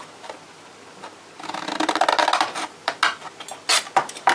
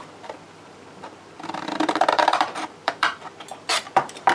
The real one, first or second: first